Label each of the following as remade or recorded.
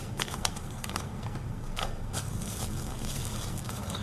remade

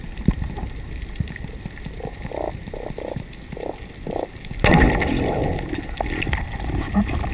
recorded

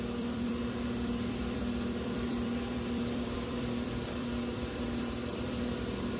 remade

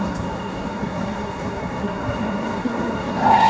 remade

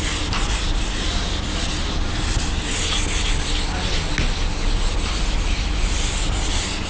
recorded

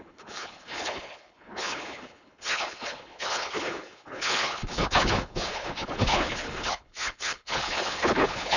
remade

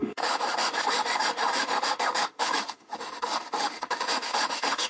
remade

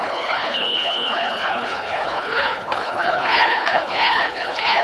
remade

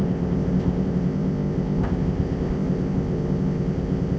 remade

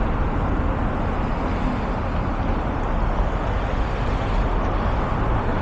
recorded